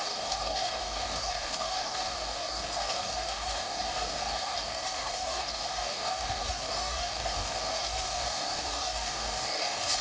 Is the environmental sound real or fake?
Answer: fake